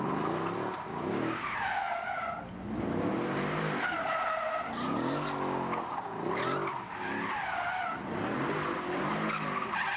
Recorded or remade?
recorded